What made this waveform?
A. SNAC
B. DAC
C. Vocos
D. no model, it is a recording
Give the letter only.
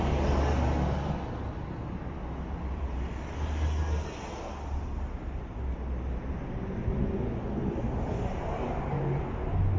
D